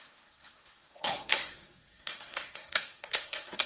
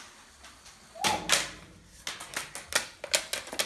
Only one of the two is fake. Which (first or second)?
first